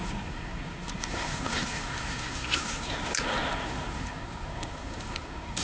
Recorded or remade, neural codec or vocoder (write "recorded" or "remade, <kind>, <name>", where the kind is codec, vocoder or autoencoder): remade, codec, SNAC